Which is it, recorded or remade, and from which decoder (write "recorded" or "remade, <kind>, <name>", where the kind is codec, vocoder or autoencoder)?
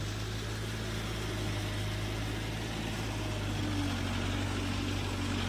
recorded